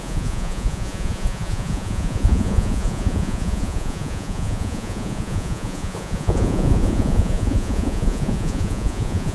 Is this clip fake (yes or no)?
yes